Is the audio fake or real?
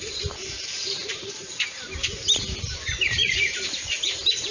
fake